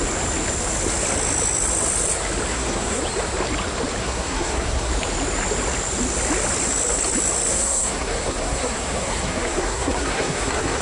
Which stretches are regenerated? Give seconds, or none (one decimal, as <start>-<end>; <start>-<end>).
2.5-3.0; 4.0-4.9; 7.5-10.8